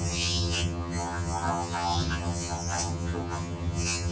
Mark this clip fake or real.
fake